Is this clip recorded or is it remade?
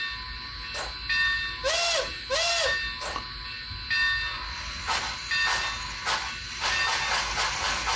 recorded